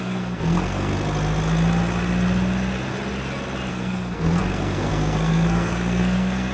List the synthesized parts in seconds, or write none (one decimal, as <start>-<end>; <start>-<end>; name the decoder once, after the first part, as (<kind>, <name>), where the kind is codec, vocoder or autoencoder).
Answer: 0.0-0.9 (codec, SNAC); 3.7-6.5